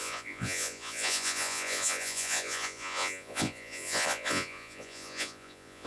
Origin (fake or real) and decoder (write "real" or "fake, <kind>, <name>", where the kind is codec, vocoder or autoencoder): fake, vocoder, Vocos